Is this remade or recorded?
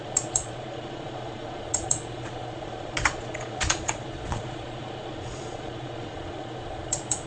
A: remade